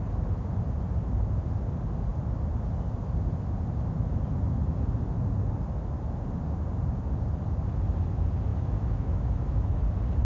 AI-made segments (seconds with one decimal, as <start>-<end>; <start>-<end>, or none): 8.5-9.7